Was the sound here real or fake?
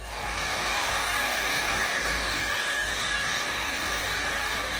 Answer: fake